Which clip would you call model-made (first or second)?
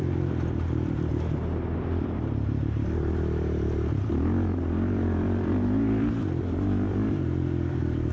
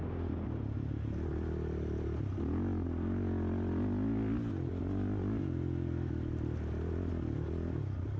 first